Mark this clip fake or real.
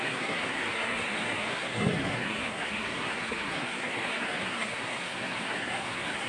fake